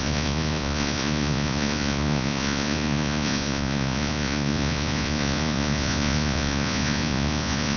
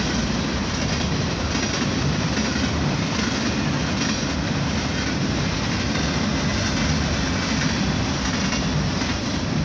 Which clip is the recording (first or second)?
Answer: second